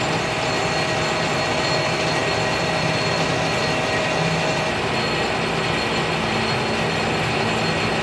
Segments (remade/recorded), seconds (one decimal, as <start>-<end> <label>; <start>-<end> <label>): 0.0-8.0 recorded